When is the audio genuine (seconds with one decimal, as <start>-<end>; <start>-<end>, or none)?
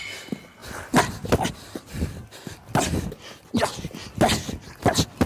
0.0-5.3